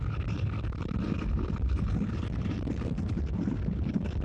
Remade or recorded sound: remade